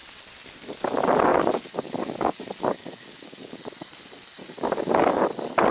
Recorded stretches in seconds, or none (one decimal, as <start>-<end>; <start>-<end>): 0.0-1.3; 3.6-4.4; 5.1-5.7